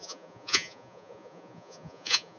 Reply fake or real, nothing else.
fake